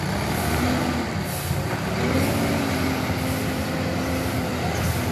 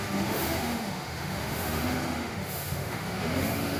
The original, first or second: first